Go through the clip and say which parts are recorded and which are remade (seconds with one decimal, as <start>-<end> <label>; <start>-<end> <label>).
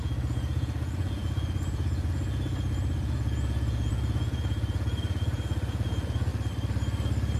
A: 0.0-6.3 remade; 6.3-7.4 recorded